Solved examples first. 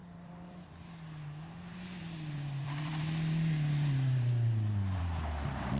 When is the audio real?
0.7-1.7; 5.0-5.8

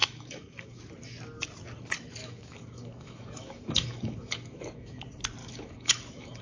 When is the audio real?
0.8-2.2; 5.0-5.4

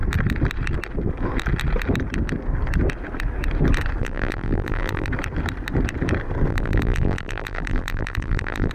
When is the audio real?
0.0-4.0; 5.1-6.5

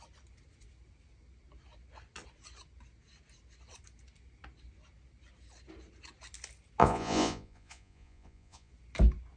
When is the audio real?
0.0-6.8; 8.7-9.4

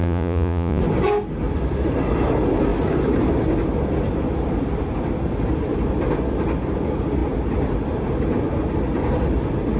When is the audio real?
0.8-9.8

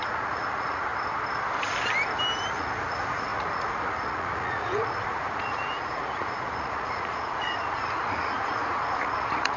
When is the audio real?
0.9-2.5

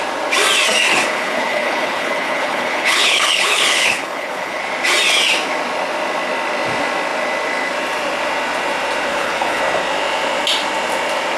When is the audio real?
0.0-0.9; 4.6-9.1; 9.6-11.4

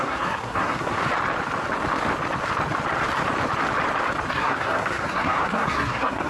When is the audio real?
1.0-4.3